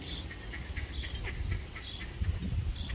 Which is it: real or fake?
real